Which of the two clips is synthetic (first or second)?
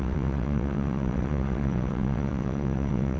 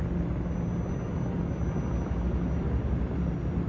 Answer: first